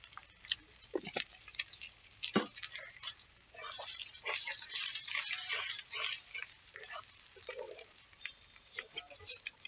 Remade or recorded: remade